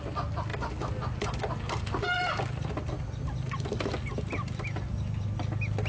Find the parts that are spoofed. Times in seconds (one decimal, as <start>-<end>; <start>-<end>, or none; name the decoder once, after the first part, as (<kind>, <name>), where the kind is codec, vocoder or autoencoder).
none

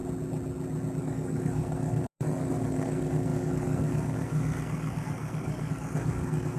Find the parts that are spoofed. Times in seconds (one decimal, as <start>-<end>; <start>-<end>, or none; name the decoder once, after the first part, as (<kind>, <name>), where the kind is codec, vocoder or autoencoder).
1.0-6.6 (codec, SNAC)

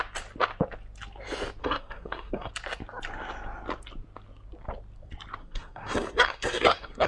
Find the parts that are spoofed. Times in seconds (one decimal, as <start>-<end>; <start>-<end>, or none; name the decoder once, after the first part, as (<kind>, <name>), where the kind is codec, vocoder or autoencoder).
1.6-2.5 (codec, SNAC); 5.4-7.1

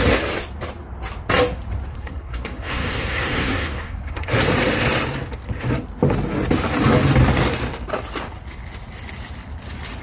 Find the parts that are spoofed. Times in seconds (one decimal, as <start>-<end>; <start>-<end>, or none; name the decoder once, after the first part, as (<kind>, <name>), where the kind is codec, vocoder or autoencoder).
1.9-4.4 (codec, SNAC)

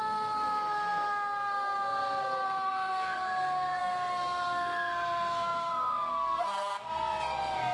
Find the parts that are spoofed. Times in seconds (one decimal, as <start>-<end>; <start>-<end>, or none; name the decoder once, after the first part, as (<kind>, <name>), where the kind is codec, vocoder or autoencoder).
0.0-7.7 (codec, SNAC)

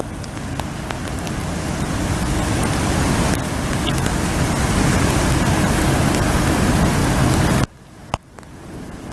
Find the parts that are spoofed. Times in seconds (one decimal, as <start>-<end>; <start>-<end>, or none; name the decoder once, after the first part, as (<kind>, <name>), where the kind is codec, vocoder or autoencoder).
none

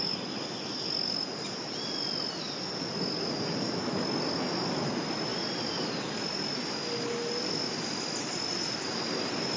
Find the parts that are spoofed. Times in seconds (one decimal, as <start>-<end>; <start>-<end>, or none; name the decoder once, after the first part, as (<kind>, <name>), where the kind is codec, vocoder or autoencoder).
none